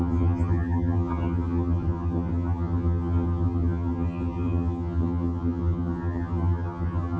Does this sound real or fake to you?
fake